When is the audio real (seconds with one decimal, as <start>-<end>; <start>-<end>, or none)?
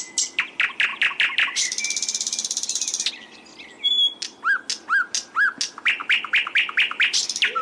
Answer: 0.0-7.6